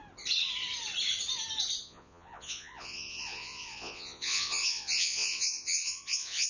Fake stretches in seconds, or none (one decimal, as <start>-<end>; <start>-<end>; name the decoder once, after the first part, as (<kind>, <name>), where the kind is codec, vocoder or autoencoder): 1.8-6.5 (vocoder, Vocos)